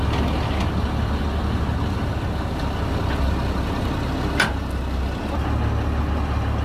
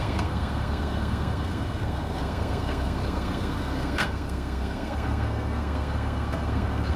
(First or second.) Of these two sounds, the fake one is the second